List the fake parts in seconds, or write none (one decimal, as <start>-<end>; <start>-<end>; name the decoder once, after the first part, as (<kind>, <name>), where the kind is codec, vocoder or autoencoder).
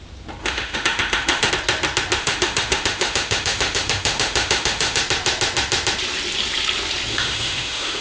0.4-1.5 (autoencoder, DAC-VAE); 2.2-5.0; 7.1-8.0